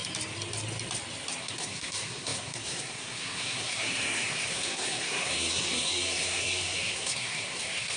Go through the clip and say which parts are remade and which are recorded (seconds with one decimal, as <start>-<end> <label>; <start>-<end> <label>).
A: 0.0-1.4 recorded; 1.4-8.0 remade